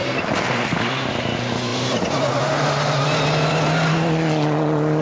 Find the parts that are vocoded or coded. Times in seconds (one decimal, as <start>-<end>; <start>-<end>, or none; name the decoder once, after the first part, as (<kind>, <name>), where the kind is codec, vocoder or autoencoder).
none